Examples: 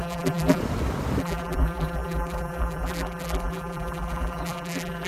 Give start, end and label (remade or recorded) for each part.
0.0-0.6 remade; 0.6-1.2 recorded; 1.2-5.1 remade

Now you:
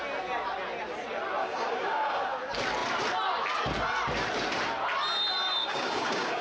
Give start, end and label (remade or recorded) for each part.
0.0-1.4 recorded; 1.4-2.2 remade; 2.2-5.6 recorded; 5.6-6.4 remade

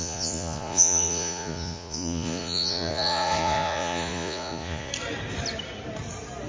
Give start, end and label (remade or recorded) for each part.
0.0-4.9 remade; 4.9-6.5 recorded

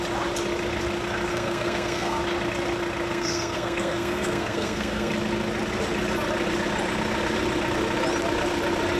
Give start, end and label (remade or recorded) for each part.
0.0-1.3 recorded; 1.3-2.2 remade; 2.2-3.1 recorded; 3.1-5.1 remade; 5.1-9.0 recorded

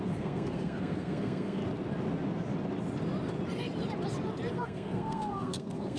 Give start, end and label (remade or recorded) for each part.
0.0-1.6 remade; 1.6-4.5 recorded; 4.5-6.0 remade

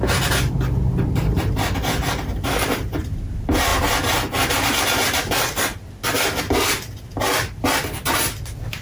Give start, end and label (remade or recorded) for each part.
0.0-8.8 recorded